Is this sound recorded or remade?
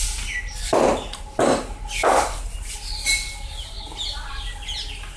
recorded